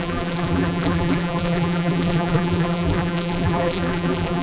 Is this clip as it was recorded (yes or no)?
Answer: no